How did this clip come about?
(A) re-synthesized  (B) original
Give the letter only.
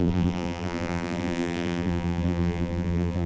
A